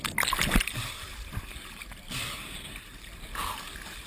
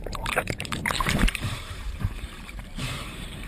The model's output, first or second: second